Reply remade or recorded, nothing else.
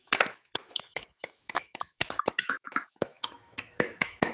remade